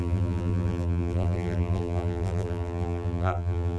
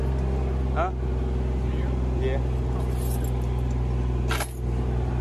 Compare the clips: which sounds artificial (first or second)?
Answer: first